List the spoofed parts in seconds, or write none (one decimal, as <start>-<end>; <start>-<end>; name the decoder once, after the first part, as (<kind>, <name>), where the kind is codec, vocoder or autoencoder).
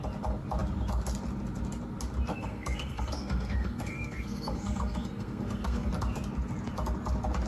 2.3-5.9 (codec, SNAC)